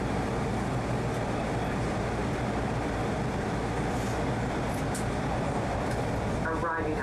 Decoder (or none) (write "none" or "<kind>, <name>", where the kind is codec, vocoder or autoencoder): none